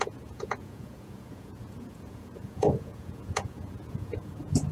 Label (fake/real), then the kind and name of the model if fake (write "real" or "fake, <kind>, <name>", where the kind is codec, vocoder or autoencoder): fake, vocoder, Vocos